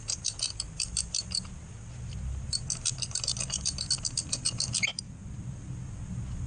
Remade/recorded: recorded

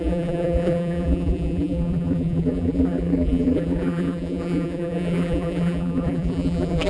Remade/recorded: remade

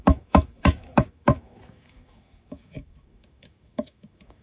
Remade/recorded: remade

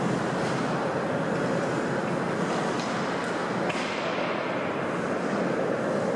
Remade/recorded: recorded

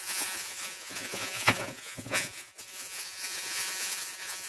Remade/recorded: remade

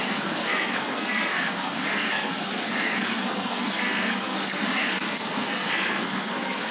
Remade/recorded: remade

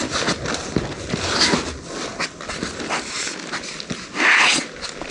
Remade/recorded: recorded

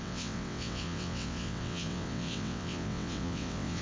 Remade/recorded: remade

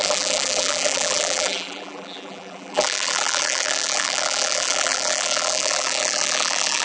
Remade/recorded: remade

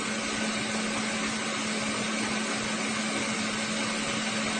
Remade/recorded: recorded